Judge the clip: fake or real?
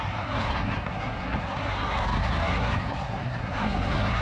fake